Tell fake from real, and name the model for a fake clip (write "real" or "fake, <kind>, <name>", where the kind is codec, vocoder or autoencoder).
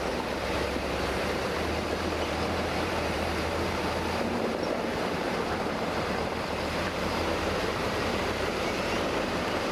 fake, vocoder, BigVGAN v2